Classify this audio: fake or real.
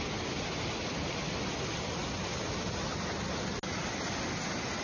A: real